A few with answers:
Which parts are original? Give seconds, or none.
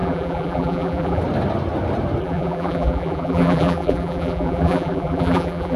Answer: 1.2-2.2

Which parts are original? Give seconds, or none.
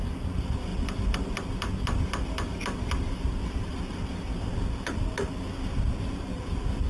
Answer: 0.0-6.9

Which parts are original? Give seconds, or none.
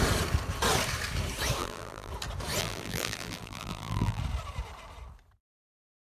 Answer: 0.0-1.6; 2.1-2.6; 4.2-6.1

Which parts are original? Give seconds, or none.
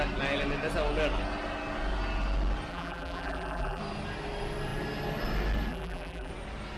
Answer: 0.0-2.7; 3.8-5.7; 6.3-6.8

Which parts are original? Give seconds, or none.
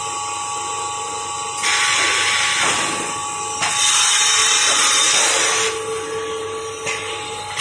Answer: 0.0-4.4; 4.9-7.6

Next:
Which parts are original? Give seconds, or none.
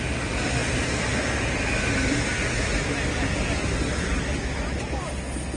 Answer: 0.0-5.6